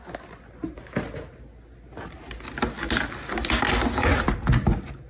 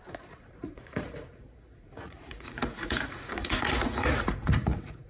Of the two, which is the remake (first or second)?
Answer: second